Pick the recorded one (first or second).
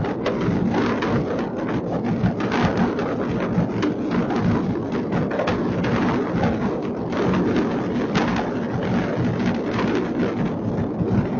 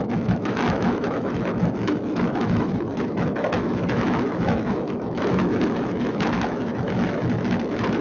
first